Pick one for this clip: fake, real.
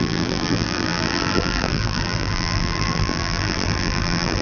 fake